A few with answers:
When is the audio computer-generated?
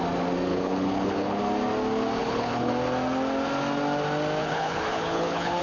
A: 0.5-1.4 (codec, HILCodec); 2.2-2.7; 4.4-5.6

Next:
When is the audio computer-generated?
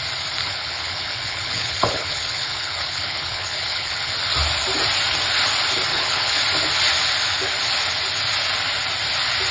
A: 0.4-4.1 (codec, HILCodec); 5.9-6.4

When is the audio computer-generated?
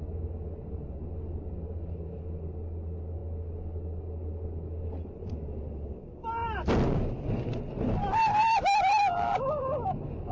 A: none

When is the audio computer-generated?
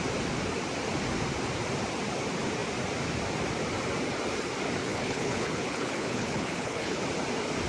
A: 4.8-7.0 (codec, HILCodec)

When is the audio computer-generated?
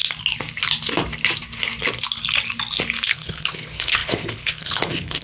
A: 3.1-5.2 (codec, HILCodec)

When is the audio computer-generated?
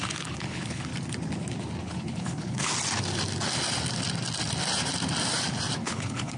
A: 0.0-0.9 (codec, HILCodec); 1.8-2.7; 5.8-6.4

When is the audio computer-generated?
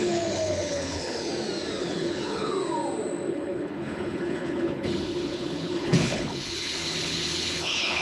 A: 0.0-1.3 (codec, HILCodec); 1.8-2.5; 3.3-8.0